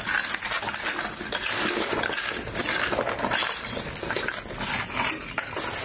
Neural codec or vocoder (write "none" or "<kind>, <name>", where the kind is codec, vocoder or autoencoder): none